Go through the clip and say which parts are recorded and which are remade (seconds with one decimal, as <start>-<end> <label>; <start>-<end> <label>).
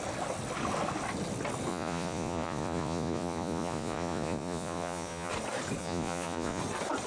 0.0-1.7 recorded; 1.7-5.3 remade; 5.3-5.8 recorded; 5.8-6.6 remade; 6.6-7.1 recorded